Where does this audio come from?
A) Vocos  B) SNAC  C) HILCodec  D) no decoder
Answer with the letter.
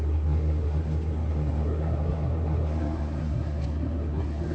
B